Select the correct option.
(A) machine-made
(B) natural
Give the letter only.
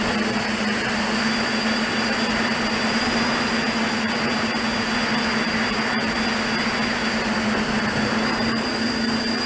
B